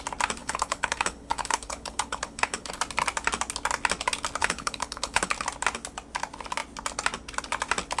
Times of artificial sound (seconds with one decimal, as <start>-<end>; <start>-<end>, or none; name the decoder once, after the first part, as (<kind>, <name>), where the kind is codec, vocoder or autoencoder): 0.4-2.7 (codec, HILCodec); 4.4-5.3